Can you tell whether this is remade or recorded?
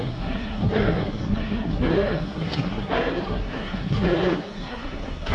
remade